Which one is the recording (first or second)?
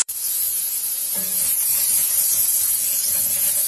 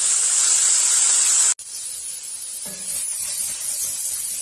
second